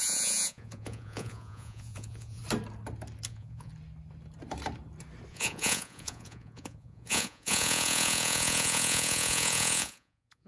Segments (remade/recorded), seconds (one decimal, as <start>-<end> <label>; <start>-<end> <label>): 0.0-2.4 remade; 2.4-3.3 recorded; 3.3-3.7 remade; 3.7-5.3 recorded; 5.3-10.5 remade